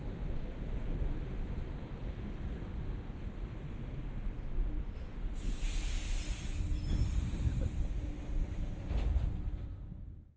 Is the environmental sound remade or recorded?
recorded